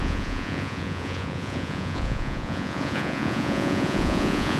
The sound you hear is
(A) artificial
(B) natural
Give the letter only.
A